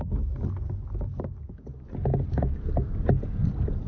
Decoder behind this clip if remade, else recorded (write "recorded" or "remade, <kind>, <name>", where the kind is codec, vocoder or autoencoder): recorded